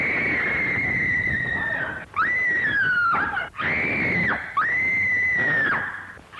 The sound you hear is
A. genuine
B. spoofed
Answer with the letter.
A